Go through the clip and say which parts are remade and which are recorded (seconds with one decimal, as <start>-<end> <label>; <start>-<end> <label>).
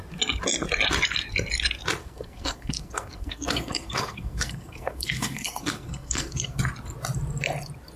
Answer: 0.0-2.0 recorded; 2.0-6.6 remade; 6.6-8.0 recorded